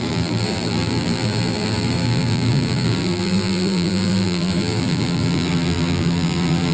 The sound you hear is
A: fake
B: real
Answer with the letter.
A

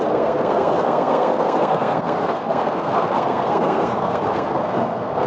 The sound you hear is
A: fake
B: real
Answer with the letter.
A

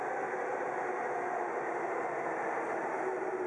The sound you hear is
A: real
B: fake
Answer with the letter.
A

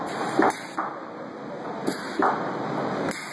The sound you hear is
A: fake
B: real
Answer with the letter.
B